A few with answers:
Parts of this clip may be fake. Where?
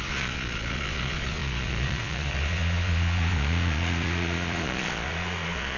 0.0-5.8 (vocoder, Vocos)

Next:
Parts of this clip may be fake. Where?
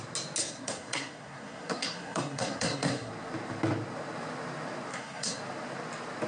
0.4-3.1 (codec, SNAC); 4.9-5.4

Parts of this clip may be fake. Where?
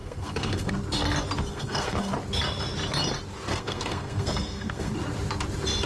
0.0-0.7 (codec, SNAC); 1.5-2.1; 3.5-4.9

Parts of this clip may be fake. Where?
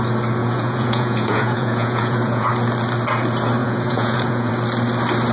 0.4-2.5 (vocoder, Vocos); 3.6-4.5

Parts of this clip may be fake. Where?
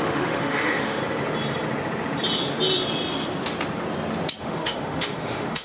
0.0-1.0 (autoencoder, DAC-VAE); 4.4-5.6